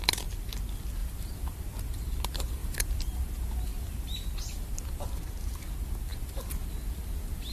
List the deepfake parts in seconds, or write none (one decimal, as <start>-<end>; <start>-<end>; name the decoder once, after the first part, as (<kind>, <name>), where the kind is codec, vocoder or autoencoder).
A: 1.0-1.8 (vocoder, BigVGAN v2)